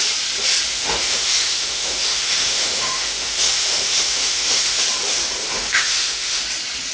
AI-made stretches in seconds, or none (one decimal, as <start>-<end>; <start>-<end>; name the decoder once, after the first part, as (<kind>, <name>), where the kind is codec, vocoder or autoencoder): 0.7-4.8 (autoencoder, DAC-VAE); 5.4-6.4